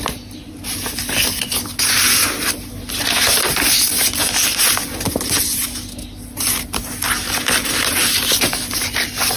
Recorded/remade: recorded